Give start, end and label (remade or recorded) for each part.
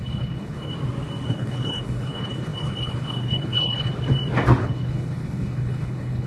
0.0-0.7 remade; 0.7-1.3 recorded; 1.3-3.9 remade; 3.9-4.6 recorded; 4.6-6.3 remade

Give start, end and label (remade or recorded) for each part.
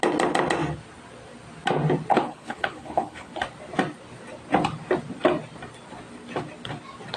0.0-2.1 recorded; 2.1-3.3 remade; 3.3-7.2 recorded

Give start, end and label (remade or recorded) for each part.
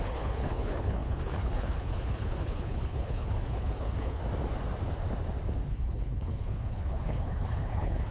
0.0-4.2 remade; 4.2-5.7 recorded; 5.7-8.1 remade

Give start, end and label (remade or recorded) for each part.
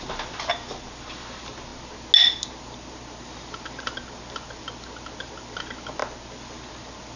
0.0-7.2 recorded